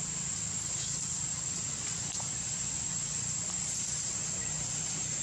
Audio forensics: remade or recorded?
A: recorded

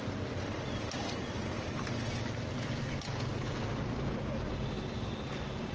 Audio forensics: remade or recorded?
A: recorded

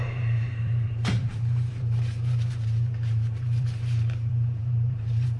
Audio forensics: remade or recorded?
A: remade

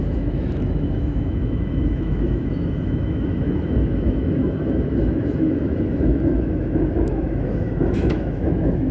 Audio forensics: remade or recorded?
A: remade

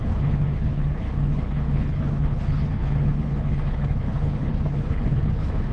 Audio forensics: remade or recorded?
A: remade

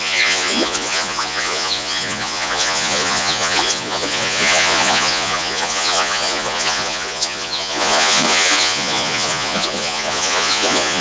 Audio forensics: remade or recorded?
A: remade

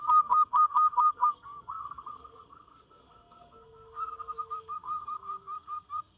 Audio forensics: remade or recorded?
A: remade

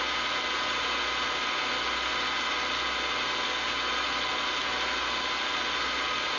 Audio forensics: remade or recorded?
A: recorded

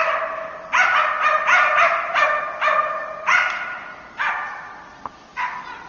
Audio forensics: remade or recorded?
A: recorded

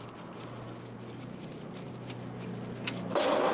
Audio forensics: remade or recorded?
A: recorded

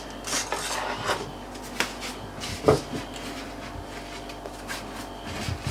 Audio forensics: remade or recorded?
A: recorded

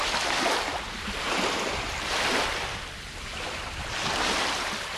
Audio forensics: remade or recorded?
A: recorded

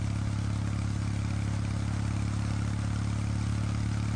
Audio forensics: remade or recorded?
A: recorded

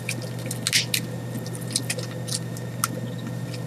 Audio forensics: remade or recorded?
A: recorded